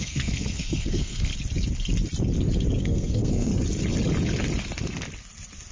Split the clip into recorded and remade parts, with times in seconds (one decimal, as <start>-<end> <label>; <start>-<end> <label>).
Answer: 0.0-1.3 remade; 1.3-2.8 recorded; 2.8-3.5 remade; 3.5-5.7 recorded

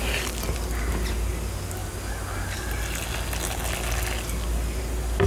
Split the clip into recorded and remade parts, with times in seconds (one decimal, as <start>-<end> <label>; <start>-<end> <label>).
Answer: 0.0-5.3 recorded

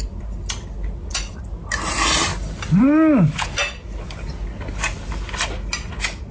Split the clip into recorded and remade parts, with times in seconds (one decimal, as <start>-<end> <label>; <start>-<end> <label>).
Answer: 0.0-6.3 recorded